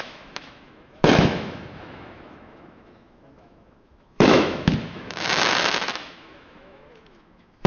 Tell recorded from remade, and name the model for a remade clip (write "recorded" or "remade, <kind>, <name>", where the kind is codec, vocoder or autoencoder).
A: remade, autoencoder, DAC-VAE